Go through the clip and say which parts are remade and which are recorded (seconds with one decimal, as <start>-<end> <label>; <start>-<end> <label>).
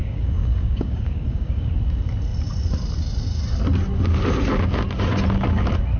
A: 0.0-1.7 remade; 1.7-6.0 recorded